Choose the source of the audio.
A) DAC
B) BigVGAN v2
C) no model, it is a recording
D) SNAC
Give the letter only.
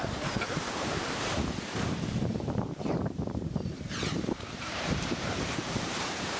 B